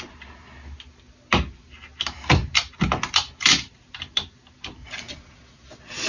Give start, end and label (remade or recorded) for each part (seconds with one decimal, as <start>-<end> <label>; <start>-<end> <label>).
0.0-4.8 recorded; 4.8-6.1 remade